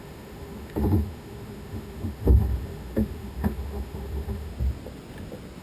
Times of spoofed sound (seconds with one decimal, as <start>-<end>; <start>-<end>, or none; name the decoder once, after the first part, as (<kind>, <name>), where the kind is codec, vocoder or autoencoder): 0.0-4.5 (autoencoder, DAC-VAE)